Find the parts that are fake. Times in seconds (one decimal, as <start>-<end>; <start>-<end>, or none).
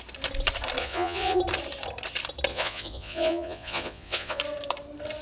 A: 0.8-1.4; 2.5-4.4